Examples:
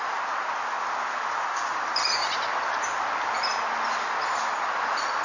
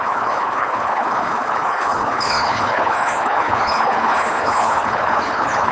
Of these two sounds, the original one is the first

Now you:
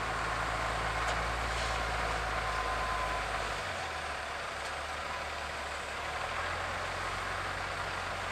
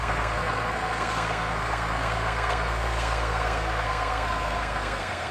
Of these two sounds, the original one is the first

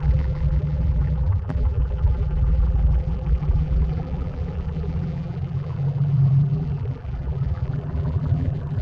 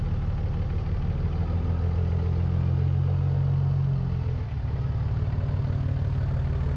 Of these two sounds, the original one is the second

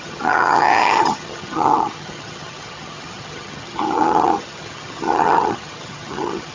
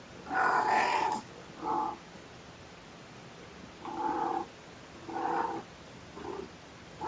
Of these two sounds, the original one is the second